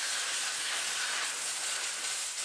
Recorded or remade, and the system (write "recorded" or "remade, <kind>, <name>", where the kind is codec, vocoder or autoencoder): recorded